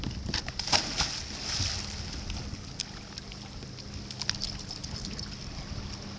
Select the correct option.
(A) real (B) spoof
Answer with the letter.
A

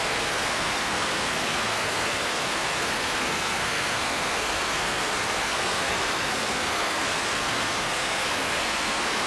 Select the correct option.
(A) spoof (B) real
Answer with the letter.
A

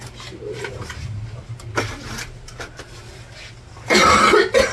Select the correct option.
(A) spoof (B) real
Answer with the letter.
B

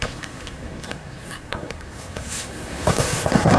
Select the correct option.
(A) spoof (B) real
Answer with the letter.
A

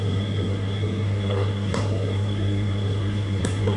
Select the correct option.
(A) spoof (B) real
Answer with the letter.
A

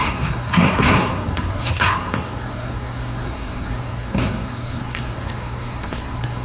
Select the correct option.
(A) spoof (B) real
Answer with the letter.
A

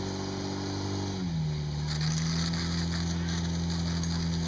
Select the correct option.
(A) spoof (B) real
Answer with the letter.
B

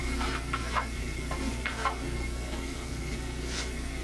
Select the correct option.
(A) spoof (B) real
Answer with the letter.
A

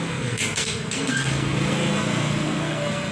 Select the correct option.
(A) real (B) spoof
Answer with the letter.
B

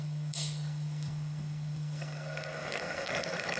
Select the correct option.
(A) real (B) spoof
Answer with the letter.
B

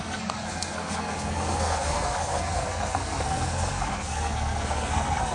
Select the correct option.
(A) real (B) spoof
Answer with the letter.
B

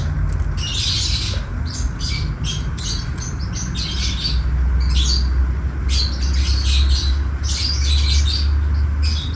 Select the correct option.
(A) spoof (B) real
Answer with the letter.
B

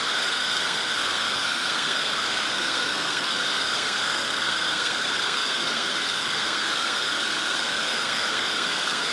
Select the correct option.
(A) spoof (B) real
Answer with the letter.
A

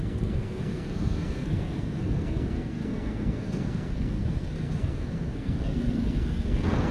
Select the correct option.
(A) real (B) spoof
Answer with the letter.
B